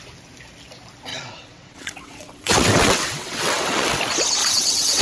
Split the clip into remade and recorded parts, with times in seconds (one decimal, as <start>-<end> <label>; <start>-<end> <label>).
0.0-1.1 recorded; 1.1-4.0 remade; 4.0-4.4 recorded; 4.4-5.0 remade